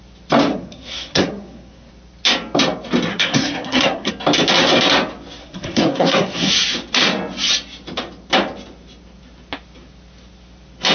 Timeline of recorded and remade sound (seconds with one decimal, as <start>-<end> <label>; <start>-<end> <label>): 0.0-0.5 recorded; 0.5-1.9 remade; 1.9-3.1 recorded; 3.1-4.1 remade; 4.1-5.4 recorded; 5.4-6.5 remade; 6.5-10.9 recorded